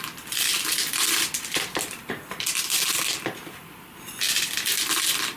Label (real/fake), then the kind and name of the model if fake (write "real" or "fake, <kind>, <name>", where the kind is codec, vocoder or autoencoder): fake, vocoder, BigVGAN v2